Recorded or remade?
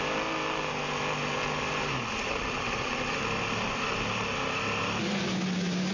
recorded